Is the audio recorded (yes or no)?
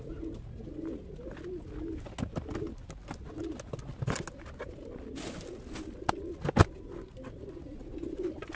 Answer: yes